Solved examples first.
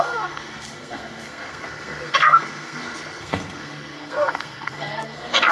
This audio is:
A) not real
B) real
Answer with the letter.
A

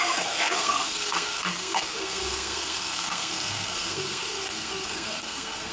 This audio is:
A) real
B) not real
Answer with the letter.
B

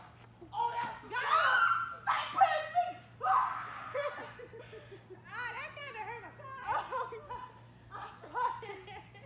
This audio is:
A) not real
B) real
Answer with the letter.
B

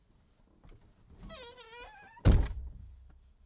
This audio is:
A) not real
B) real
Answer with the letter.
B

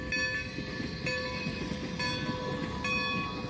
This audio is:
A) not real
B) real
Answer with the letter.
B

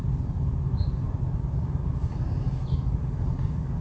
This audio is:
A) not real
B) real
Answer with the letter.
B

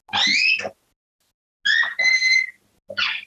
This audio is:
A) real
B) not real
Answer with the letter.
A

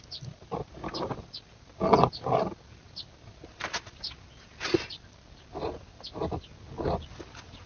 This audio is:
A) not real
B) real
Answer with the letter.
B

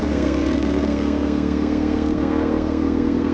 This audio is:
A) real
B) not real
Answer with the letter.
B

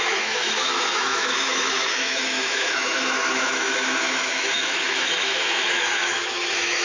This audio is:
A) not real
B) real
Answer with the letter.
A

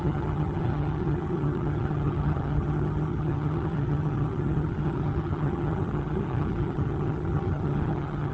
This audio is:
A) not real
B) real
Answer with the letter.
A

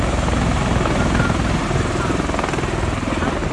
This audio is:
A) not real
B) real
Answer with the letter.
B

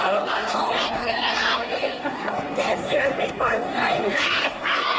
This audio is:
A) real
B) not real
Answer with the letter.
B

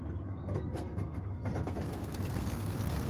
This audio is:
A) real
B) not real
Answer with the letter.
B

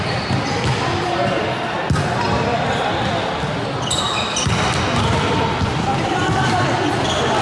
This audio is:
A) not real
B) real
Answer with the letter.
B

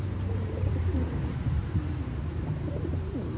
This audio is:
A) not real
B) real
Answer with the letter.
A